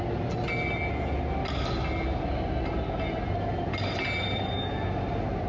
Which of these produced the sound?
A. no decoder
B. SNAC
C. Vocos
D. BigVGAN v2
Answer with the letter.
A